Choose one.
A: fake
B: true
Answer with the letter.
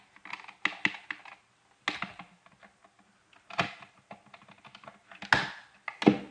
B